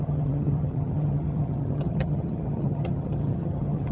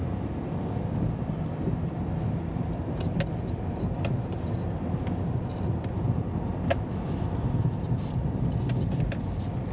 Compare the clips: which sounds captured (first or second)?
second